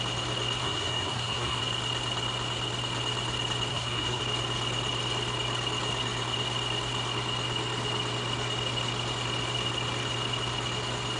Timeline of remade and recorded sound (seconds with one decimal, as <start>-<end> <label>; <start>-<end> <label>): 0.0-0.6 recorded; 0.6-1.6 remade; 1.6-3.7 recorded; 3.7-4.2 remade; 4.2-11.2 recorded